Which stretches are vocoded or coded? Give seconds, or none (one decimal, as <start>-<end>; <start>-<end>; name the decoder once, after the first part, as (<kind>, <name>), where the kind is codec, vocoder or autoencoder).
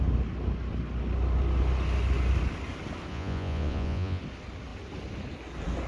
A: 3.1-4.2 (vocoder, Vocos)